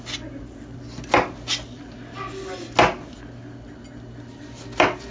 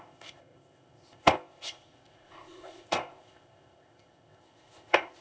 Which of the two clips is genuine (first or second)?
first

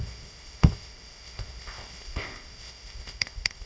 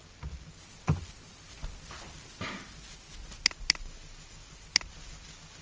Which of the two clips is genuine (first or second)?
second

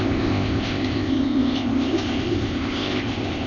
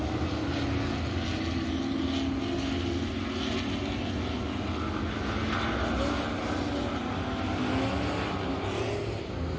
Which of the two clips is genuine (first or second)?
second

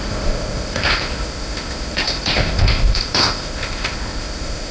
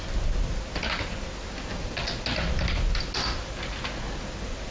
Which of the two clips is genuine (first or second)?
second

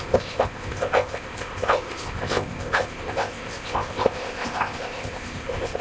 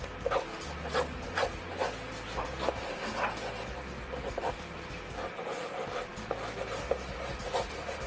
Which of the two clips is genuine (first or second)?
second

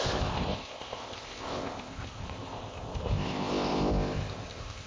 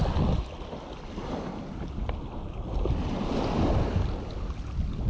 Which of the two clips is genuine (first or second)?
second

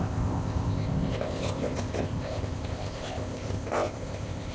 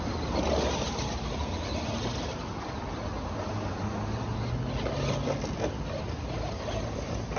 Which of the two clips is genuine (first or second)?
second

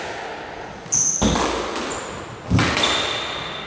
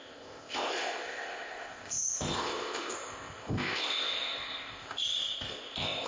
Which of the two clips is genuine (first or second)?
first